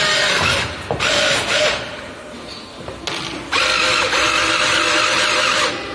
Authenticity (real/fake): real